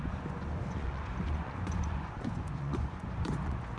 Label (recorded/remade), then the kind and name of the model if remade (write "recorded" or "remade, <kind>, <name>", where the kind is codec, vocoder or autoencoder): remade, vocoder, Vocos